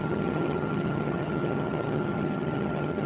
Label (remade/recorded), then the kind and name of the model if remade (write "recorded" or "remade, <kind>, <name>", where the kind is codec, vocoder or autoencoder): remade, vocoder, HiFi-GAN